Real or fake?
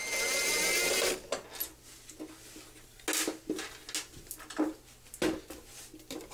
real